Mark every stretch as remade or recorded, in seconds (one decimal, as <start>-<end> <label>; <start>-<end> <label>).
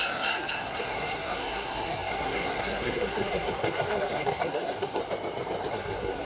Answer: 0.0-5.0 remade; 5.0-5.7 recorded; 5.7-6.2 remade